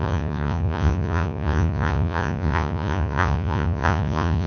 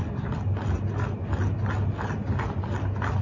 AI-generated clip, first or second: first